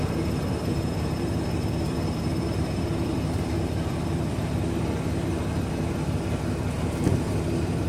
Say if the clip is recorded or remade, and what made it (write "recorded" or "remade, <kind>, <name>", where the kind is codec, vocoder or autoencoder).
remade, vocoder, BigVGAN v2